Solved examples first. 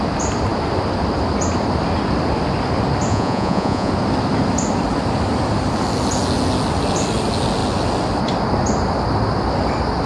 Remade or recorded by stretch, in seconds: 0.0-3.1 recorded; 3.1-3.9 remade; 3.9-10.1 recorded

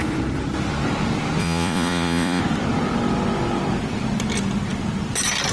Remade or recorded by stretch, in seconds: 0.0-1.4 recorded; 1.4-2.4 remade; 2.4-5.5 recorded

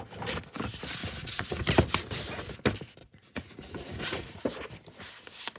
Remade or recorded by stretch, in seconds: 0.0-1.0 recorded; 1.0-1.6 remade; 1.6-3.0 recorded; 3.0-4.4 remade; 4.4-5.6 recorded

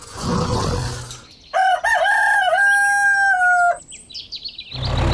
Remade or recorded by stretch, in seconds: 0.0-0.6 remade; 0.6-5.1 recorded

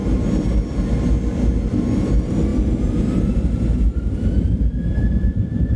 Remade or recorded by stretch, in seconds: 0.0-5.8 recorded